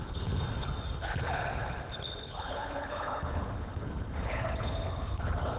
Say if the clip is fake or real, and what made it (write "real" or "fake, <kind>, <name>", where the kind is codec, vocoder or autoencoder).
fake, codec, HILCodec